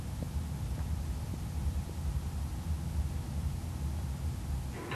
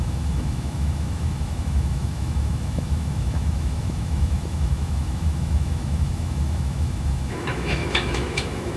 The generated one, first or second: second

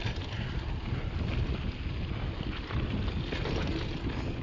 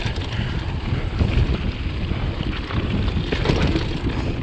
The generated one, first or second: second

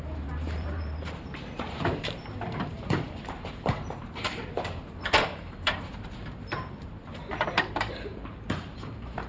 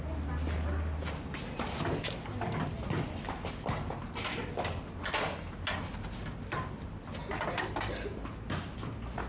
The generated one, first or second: first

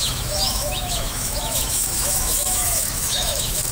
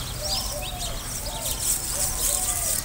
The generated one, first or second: first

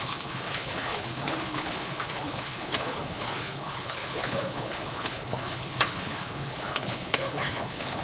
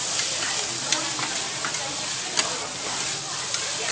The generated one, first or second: first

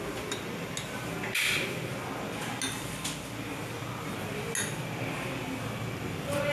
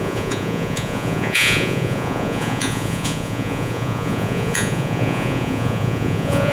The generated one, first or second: second